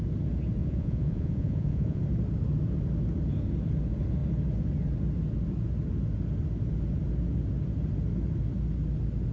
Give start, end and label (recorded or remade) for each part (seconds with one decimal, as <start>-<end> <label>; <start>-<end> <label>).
0.0-0.6 recorded; 0.6-2.0 remade; 2.0-9.3 recorded